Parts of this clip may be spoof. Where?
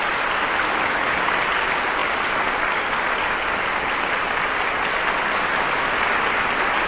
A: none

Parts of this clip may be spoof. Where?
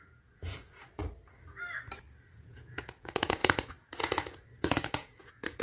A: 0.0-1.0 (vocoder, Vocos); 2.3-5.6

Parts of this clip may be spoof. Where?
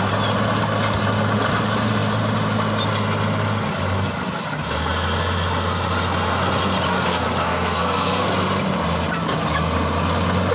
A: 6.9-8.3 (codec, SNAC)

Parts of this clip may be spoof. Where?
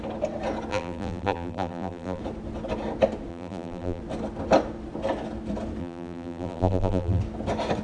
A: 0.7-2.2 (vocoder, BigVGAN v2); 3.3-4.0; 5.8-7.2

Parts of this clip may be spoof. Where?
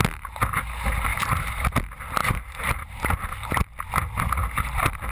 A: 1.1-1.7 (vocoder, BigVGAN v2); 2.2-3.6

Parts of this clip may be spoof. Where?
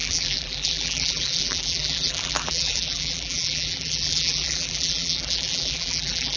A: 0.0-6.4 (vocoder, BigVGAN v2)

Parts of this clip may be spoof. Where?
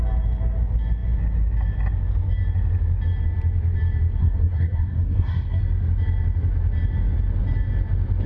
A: 4.2-5.6 (codec, SNAC)